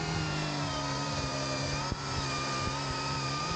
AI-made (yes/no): yes